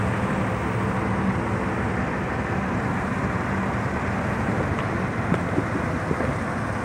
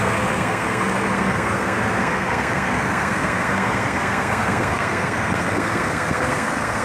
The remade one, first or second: second